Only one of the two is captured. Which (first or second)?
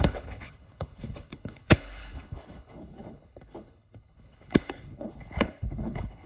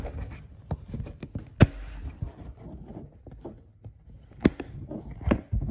second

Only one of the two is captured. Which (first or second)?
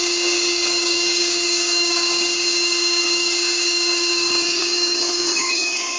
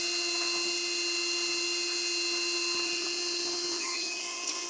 second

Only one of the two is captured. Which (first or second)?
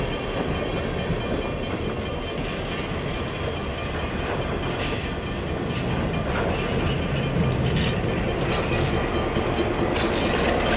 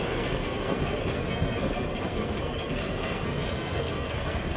first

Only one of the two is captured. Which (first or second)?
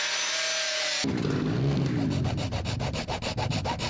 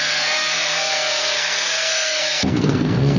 first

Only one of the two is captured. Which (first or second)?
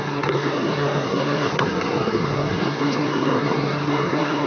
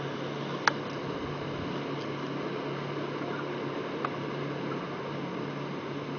second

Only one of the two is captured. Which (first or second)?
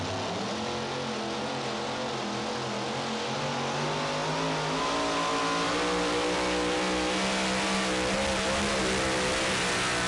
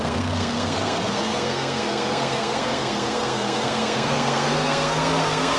first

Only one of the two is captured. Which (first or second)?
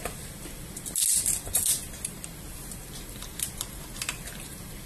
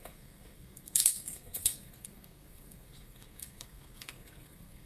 first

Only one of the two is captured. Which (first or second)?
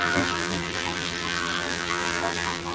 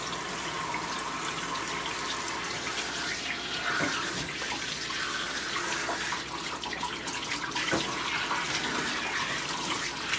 second